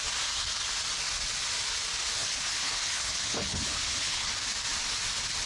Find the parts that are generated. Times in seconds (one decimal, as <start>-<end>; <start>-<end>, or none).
2.2-4.3